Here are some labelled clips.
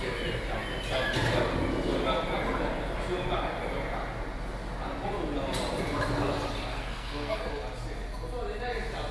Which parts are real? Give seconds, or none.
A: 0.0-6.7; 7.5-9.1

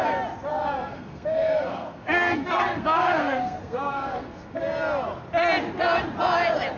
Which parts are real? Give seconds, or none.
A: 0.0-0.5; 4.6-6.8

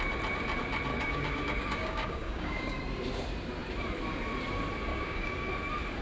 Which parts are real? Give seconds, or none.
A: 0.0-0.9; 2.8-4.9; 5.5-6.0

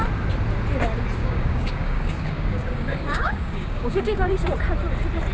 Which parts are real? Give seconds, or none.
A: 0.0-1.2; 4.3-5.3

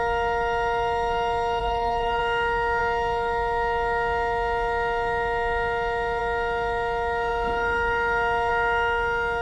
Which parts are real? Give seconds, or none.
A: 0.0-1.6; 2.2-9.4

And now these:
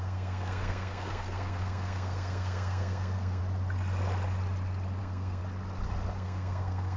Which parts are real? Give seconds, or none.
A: 3.4-5.0; 5.4-6.1

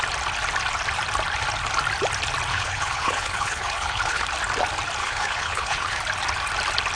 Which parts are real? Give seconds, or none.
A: 0.0-2.5; 4.2-5.0; 6.0-6.9

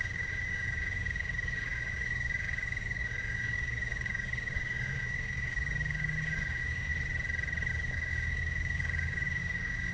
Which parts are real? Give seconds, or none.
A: 6.9-7.7